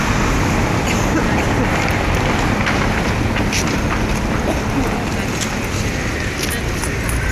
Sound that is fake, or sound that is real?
real